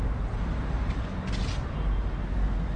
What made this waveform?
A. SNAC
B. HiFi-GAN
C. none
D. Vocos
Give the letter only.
C